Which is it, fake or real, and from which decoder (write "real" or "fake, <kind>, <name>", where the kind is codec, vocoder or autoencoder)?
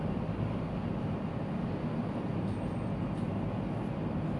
real